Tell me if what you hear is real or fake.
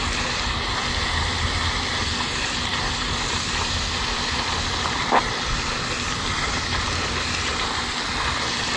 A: real